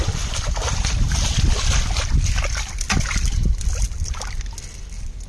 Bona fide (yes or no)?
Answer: yes